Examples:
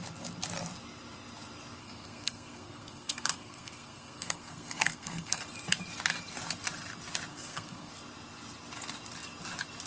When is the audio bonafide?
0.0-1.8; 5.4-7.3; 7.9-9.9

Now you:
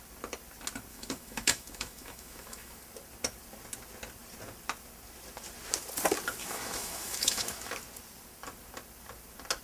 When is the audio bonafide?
0.0-0.9; 2.8-6.4; 7.7-9.6

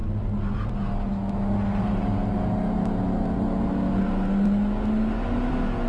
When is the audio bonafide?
0.0-5.9

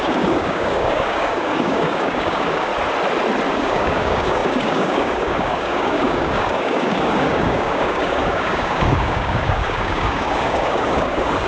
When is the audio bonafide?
2.7-3.5

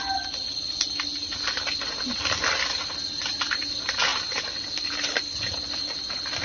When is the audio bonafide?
0.0-6.4

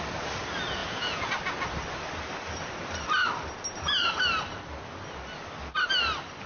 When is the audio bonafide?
0.0-0.8; 1.3-6.5

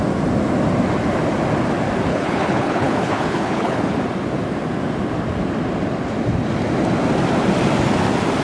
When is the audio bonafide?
0.0-2.1; 3.8-8.4

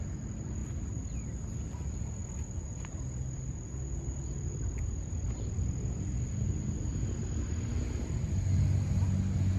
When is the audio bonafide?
0.0-9.6